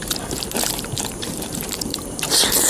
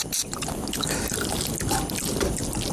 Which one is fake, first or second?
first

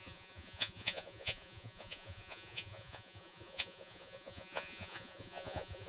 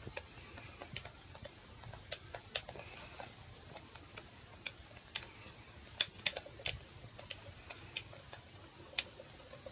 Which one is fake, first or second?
first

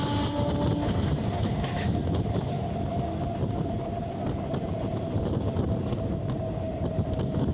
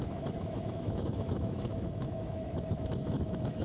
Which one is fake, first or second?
second